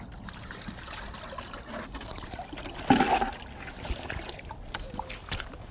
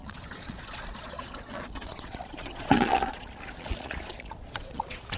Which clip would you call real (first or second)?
first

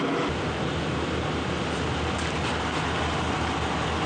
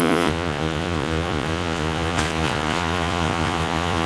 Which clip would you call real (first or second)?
first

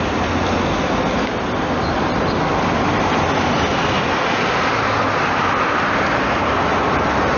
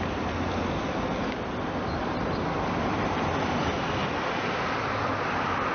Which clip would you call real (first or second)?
first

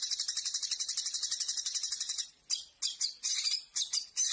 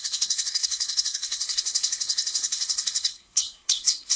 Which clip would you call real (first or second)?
first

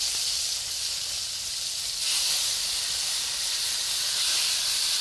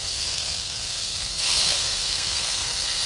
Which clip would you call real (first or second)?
first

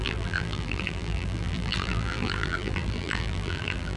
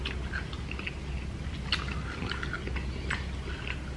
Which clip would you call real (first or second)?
second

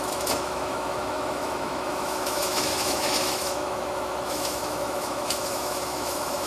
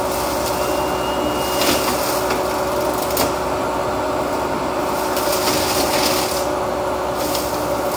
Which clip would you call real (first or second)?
second